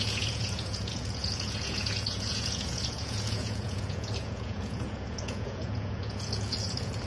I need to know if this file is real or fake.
fake